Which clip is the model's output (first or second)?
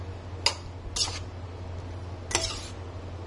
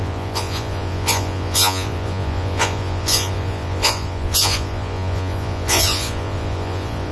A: second